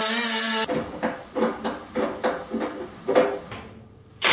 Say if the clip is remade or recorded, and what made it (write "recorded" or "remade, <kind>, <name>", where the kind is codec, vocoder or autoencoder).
recorded